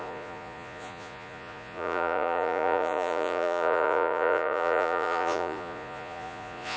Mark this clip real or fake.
fake